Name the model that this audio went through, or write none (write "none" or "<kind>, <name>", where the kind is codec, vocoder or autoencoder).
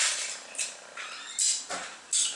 none